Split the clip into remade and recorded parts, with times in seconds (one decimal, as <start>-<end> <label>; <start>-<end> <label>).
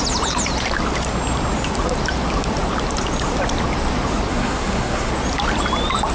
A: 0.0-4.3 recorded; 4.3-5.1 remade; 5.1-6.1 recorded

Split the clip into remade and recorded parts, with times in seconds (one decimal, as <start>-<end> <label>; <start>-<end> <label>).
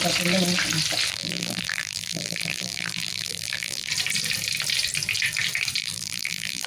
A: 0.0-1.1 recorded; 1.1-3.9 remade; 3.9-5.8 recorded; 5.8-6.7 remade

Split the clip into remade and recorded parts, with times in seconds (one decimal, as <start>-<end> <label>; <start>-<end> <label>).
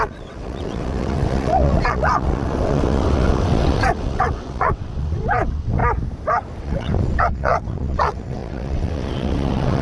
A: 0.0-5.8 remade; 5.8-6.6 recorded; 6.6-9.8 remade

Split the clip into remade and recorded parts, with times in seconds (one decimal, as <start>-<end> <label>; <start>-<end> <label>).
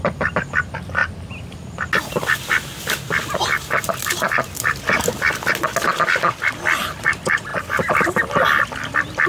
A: 0.0-9.3 recorded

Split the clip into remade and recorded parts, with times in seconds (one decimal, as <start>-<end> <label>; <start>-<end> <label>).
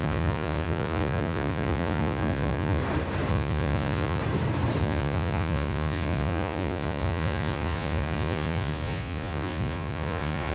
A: 0.0-2.8 remade; 2.8-3.3 recorded; 3.3-4.2 remade; 4.2-4.8 recorded; 4.8-10.5 remade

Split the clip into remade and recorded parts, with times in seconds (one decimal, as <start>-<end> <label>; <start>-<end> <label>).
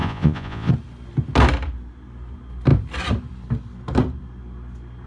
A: 0.0-0.7 remade; 0.7-5.1 recorded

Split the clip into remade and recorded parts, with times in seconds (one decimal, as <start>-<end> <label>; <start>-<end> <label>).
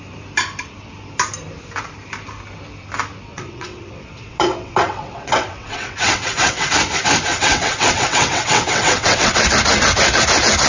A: 0.0-3.3 recorded; 3.3-6.7 remade; 6.7-7.3 recorded; 7.3-9.5 remade; 9.5-10.7 recorded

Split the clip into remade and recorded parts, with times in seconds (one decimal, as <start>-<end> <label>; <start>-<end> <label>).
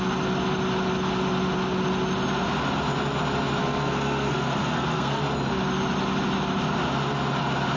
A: 0.0-3.6 recorded; 3.6-5.2 remade; 5.2-7.8 recorded